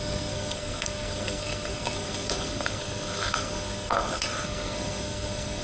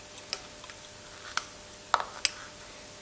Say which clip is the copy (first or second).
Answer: first